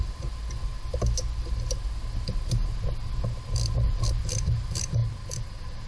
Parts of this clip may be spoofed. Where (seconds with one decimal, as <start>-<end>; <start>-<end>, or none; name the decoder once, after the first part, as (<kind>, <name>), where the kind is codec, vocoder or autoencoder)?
0.0-0.7 (vocoder, BigVGAN v2); 4.2-5.9